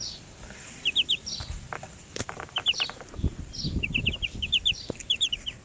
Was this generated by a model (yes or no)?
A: no